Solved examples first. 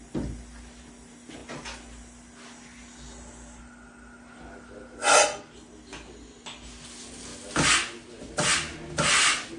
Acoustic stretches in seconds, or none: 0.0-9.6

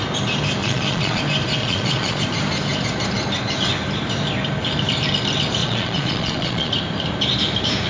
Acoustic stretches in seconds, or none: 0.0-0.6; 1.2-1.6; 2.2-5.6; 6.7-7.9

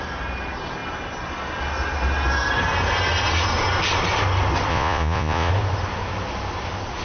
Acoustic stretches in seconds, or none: 0.0-4.7; 5.5-7.0